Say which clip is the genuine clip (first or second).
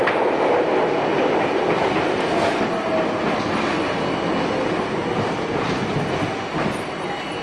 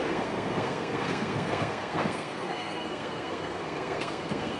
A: first